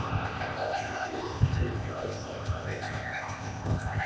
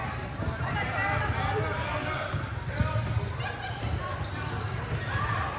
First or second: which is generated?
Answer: first